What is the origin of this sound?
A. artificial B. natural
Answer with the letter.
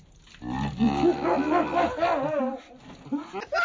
B